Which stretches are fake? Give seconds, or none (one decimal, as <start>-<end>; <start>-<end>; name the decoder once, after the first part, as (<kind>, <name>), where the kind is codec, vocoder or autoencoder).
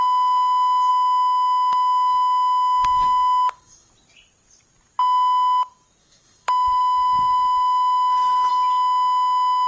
0.9-3.9 (autoencoder, DAC-VAE); 6.0-8.5